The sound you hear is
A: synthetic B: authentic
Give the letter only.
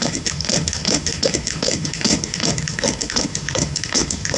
A